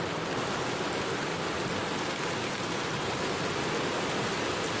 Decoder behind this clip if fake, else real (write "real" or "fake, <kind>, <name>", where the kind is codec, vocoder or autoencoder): real